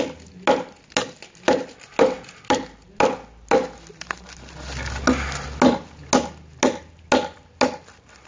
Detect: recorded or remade recorded